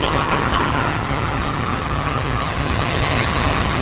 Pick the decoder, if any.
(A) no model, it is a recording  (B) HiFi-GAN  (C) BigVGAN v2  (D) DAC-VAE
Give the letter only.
B